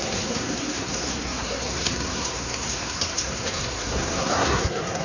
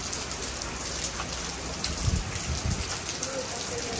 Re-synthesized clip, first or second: first